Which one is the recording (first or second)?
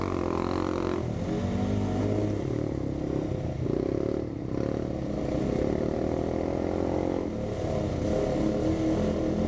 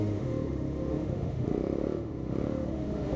first